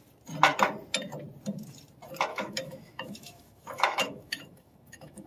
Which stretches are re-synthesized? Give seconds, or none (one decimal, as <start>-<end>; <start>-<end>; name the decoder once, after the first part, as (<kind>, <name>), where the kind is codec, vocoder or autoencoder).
2.3-5.3 (autoencoder, DAC-VAE)